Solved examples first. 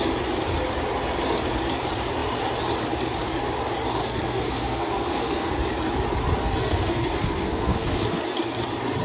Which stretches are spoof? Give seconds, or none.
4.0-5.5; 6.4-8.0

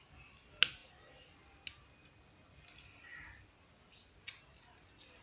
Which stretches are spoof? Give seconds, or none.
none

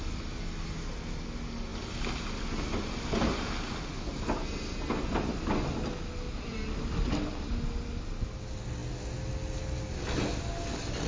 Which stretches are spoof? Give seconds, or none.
none

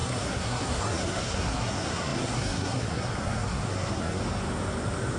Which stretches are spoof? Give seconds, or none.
0.0-4.2